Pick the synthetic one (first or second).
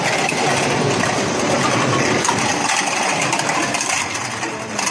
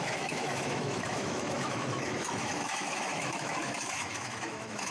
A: second